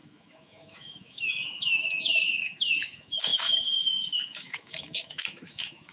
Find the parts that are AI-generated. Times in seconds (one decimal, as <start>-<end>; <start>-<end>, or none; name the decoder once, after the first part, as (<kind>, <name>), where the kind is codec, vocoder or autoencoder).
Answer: 0.0-5.9 (autoencoder, DAC-VAE)